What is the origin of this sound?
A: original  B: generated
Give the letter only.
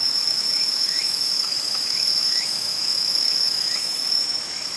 B